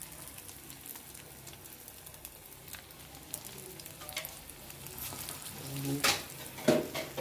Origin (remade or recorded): recorded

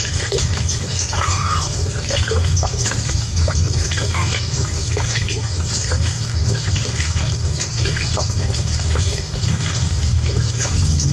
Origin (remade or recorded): remade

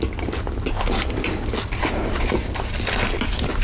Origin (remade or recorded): recorded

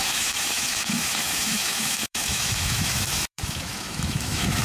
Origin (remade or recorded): remade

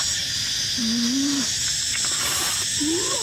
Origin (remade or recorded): recorded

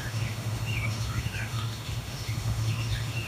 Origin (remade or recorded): remade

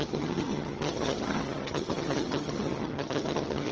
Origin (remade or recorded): remade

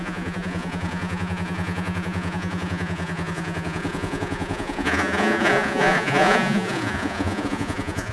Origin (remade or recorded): remade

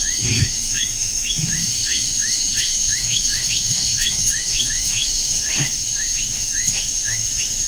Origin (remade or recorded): remade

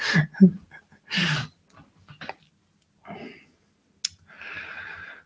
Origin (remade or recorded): recorded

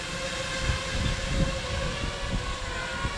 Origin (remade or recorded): recorded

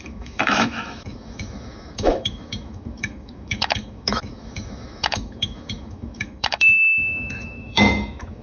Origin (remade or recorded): remade